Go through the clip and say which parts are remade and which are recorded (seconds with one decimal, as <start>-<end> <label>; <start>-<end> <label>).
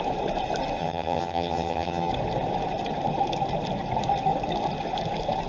0.0-0.8 recorded; 0.8-2.1 remade; 2.1-5.5 recorded